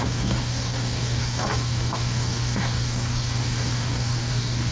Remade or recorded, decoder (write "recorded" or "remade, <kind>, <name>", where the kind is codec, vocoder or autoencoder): remade, codec, DAC